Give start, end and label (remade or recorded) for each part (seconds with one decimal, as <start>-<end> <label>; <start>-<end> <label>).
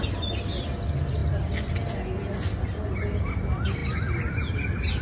0.0-5.0 recorded